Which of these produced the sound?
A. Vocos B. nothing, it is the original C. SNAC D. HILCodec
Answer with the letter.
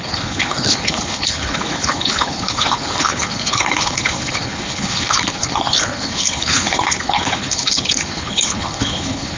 D